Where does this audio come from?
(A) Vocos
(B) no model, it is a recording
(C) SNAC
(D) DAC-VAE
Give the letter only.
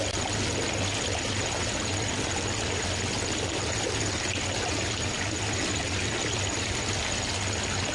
B